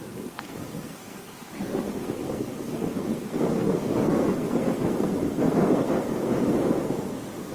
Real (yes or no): no